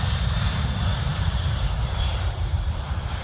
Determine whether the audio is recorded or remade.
remade